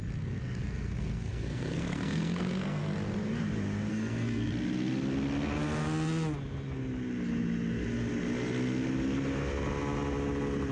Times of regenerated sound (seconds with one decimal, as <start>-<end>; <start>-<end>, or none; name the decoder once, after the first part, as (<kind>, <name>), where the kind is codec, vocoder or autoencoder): 0.4-2.8 (codec, SNAC); 3.9-4.5